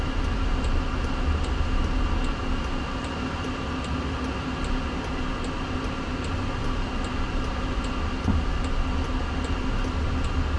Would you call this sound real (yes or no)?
yes